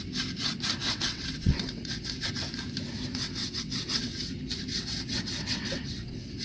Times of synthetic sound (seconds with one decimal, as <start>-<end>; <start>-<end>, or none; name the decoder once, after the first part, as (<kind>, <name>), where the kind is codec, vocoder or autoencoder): 0.8-2.3 (vocoder, WaveNeXt); 3.1-4.3; 4.7-6.4